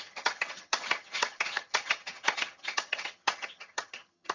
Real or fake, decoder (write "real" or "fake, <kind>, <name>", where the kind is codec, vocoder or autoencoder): fake, vocoder, HiFi-GAN